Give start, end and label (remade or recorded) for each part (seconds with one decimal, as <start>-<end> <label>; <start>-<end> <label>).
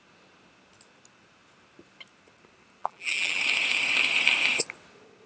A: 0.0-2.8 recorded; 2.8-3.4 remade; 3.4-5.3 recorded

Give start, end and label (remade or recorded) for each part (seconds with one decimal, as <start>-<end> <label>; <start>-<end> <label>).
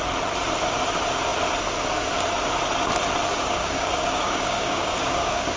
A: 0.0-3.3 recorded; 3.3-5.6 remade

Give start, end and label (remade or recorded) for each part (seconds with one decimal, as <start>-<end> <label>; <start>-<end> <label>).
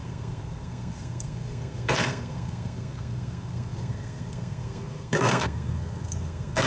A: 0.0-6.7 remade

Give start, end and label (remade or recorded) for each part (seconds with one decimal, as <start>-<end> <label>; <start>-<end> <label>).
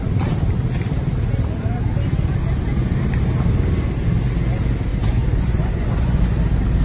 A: 0.0-4.9 recorded; 4.9-6.2 remade; 6.2-6.8 recorded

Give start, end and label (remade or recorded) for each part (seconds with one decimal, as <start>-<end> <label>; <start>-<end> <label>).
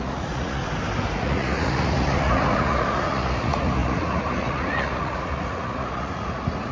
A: 0.0-0.6 remade; 0.6-1.2 recorded; 1.2-6.7 remade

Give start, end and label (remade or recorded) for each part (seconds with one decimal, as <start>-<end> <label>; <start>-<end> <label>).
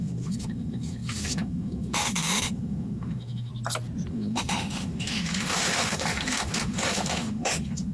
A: 0.0-3.5 remade; 3.5-4.1 recorded; 4.1-7.9 remade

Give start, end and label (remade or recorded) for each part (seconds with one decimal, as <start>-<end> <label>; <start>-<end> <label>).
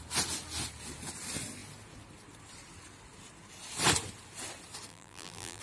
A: 0.0-4.9 recorded; 4.9-5.6 remade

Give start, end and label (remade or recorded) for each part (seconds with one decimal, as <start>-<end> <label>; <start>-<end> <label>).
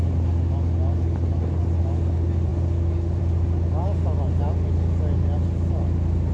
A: 0.0-6.3 recorded